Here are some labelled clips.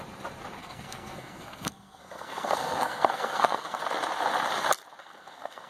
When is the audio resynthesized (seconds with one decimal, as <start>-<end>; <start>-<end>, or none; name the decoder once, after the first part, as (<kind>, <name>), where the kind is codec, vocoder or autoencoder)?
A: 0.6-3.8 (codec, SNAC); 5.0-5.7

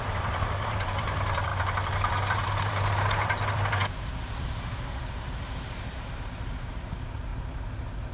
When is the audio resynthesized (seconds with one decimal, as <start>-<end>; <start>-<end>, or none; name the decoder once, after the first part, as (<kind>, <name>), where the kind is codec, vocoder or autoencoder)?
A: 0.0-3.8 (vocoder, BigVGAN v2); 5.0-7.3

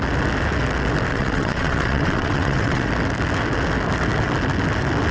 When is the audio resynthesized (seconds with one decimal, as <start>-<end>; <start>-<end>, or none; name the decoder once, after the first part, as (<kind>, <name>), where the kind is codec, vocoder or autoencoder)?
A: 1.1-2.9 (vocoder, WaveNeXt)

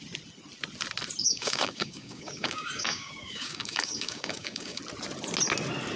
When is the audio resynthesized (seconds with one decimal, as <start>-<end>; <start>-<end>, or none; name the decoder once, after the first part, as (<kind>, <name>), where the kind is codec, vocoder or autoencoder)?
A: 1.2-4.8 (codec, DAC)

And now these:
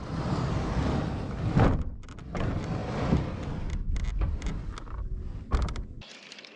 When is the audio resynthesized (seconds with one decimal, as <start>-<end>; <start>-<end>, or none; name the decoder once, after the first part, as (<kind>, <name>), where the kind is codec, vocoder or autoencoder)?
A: none

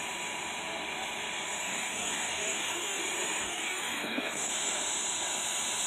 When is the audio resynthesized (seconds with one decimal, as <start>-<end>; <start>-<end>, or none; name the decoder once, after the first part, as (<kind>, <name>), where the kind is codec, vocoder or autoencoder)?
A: 1.6-3.0 (codec, DAC); 3.4-4.5